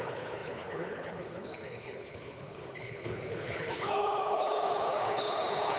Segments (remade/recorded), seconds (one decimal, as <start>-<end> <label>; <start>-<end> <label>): 0.0-5.8 remade